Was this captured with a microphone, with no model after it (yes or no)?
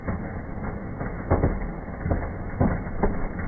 no